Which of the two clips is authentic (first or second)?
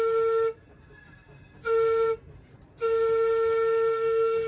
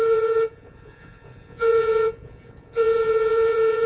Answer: first